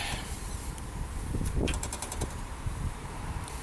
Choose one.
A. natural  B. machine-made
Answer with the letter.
B